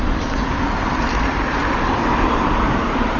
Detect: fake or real real